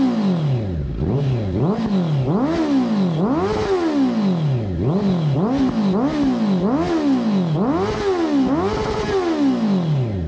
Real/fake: real